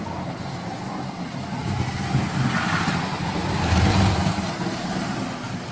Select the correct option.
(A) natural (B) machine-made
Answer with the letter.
A